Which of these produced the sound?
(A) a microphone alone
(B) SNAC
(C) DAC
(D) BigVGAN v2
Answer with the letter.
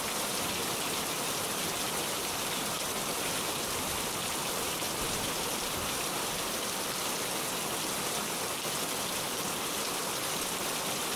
D